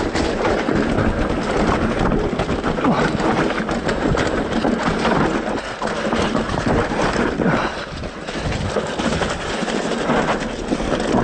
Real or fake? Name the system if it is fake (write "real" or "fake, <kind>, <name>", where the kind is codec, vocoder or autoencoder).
real